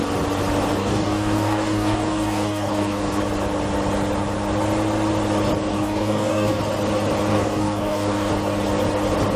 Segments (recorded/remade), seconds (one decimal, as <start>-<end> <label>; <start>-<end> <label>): 0.0-0.8 recorded; 0.8-3.2 remade; 3.2-5.7 recorded; 5.7-6.6 remade; 6.6-7.3 recorded; 7.3-8.3 remade; 8.3-9.4 recorded